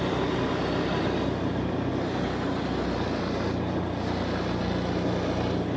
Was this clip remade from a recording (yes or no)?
no